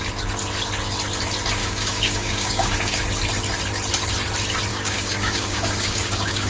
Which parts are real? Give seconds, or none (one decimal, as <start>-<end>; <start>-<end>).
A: 0.0-1.6; 3.0-4.7